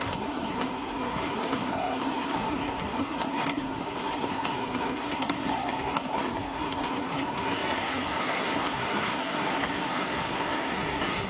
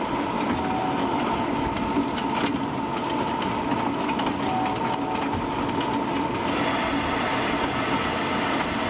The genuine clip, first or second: second